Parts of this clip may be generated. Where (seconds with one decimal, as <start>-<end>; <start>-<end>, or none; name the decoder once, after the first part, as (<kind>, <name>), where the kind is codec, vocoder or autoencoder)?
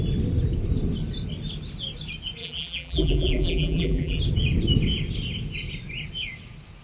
2.4-4.2 (vocoder, BigVGAN v2)